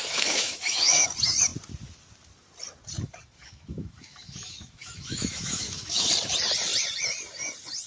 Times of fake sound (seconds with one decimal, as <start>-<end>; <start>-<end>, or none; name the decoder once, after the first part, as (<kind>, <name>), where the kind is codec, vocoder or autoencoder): 0.0-1.1 (autoencoder, DAC-VAE); 3.4-6.1